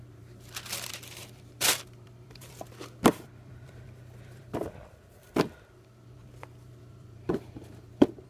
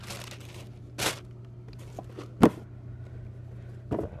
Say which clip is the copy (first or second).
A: first